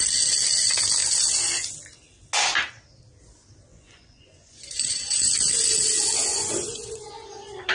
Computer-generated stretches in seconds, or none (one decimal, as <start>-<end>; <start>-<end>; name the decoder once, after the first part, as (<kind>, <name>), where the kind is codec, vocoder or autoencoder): 3.7-5.3 (vocoder, Vocos); 6.3-7.7